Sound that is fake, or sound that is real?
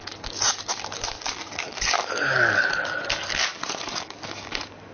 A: fake